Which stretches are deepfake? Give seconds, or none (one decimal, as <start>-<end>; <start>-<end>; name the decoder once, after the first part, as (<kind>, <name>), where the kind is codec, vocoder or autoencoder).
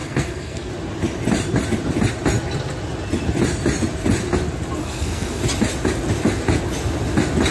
0.0-0.7 (codec, SNAC); 4.8-5.4